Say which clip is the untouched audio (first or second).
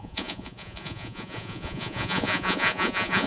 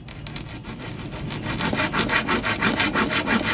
second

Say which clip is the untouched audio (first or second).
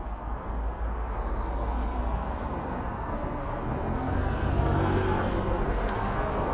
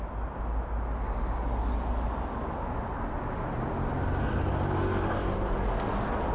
second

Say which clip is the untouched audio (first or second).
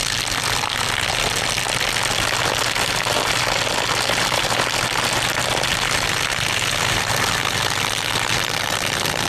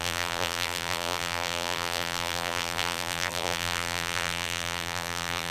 first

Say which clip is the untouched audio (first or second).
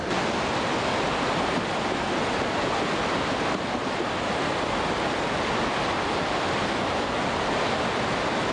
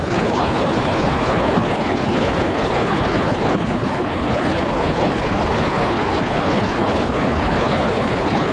first